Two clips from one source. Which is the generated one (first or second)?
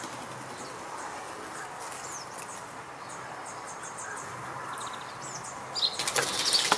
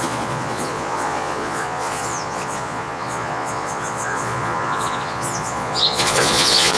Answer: second